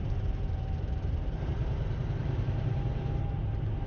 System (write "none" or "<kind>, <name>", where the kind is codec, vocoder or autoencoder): vocoder, BigVGAN v2